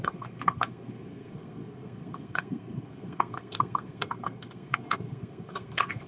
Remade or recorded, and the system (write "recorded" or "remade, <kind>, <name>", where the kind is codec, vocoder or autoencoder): remade, codec, SNAC